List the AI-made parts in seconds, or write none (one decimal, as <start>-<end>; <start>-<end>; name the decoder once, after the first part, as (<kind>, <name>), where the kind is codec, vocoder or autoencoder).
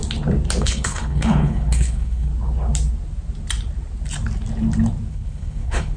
0.6-2.3 (codec, HILCodec); 5.1-6.0